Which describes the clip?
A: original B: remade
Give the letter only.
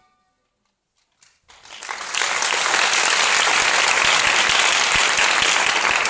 A